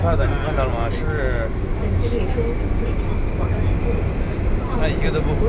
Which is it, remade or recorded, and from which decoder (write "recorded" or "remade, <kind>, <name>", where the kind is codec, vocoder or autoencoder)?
recorded